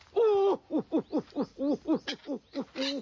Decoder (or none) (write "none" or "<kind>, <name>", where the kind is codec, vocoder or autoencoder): none